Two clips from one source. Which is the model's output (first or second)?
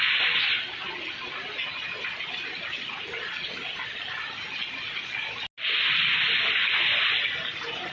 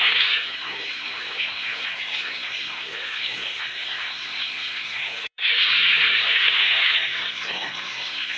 second